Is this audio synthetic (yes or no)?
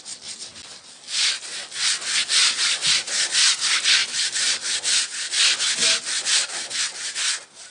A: no